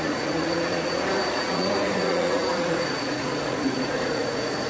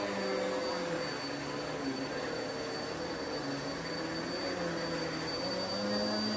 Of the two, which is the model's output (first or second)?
first